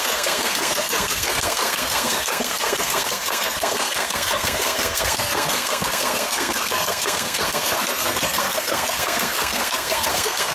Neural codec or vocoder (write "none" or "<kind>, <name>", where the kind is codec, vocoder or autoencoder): codec, SNAC